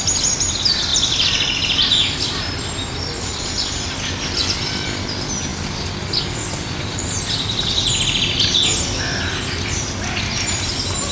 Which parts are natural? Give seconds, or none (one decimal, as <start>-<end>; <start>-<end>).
0.0-11.1

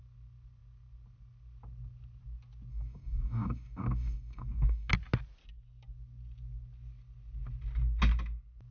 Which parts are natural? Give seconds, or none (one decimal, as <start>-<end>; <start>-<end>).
0.0-2.7; 4.9-8.7